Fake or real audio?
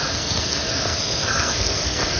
fake